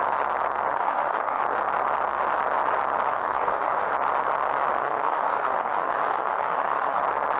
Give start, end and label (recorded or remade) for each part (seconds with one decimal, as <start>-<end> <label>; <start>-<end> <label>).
0.0-0.7 recorded; 0.7-1.4 remade; 1.4-3.1 recorded; 3.1-3.9 remade; 3.9-4.8 recorded; 4.8-7.0 remade; 7.0-7.4 recorded